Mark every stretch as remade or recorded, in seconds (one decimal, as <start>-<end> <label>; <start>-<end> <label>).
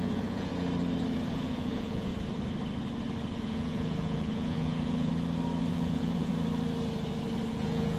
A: 0.0-0.5 remade; 0.5-1.3 recorded; 1.3-2.1 remade; 2.1-3.4 recorded; 3.4-5.1 remade; 5.1-5.7 recorded; 5.7-6.3 remade; 6.3-7.5 recorded; 7.5-8.0 remade